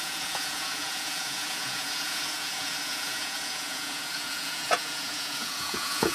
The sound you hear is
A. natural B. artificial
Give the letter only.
B